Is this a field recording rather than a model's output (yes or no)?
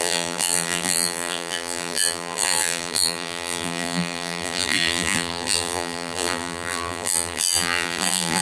no